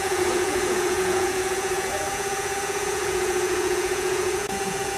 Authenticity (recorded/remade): remade